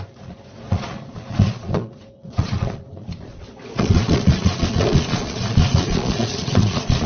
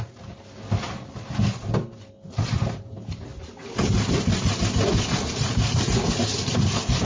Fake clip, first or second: first